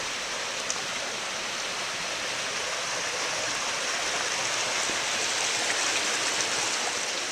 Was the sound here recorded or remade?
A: recorded